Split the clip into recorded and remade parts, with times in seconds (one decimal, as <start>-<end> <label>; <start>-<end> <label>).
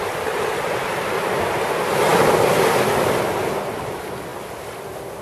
0.0-2.1 recorded; 2.1-2.7 remade; 2.7-5.2 recorded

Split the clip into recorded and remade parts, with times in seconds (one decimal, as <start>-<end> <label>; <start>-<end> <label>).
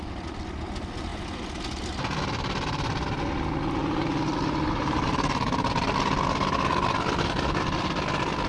0.0-3.8 recorded; 3.8-5.7 remade; 5.7-8.5 recorded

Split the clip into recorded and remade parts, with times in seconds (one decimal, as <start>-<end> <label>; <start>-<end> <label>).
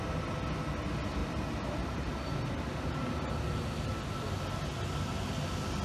0.0-1.2 recorded; 1.2-3.3 remade; 3.3-5.8 recorded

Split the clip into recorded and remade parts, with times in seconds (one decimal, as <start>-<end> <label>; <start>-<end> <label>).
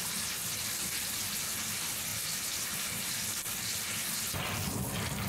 0.0-5.3 recorded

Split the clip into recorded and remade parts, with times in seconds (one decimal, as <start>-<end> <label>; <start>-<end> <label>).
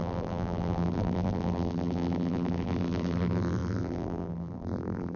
0.0-5.2 remade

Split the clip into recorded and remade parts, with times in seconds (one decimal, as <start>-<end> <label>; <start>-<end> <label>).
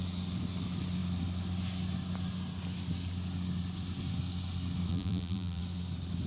0.0-4.9 recorded; 4.9-5.6 remade; 5.6-6.3 recorded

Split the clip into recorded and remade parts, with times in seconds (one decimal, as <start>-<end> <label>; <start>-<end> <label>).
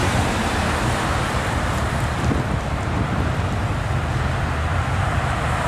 0.0-3.4 remade; 3.4-5.7 recorded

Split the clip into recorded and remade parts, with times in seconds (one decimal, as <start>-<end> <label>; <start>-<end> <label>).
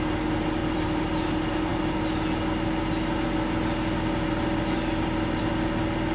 0.0-0.6 recorded; 0.6-1.2 remade; 1.2-6.1 recorded